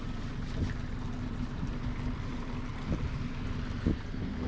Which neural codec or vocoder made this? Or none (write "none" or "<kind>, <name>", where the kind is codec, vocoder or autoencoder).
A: none